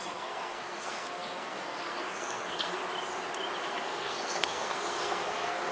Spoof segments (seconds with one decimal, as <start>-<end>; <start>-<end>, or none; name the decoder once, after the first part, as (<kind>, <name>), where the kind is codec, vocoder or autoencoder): 0.0-2.8 (codec, SNAC); 3.6-5.7